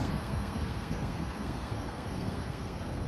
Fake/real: fake